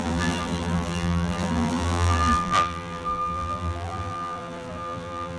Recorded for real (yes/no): no